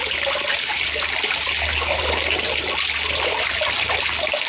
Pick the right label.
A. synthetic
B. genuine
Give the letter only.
B